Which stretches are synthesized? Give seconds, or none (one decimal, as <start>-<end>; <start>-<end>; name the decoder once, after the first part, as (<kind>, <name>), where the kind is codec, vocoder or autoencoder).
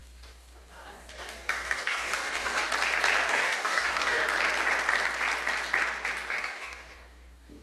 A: 0.0-2.7 (codec, DAC); 3.3-4.2; 6.3-7.6